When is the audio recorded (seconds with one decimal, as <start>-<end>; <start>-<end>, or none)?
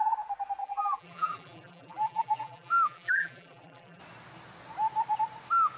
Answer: 0.0-0.6; 4.0-5.8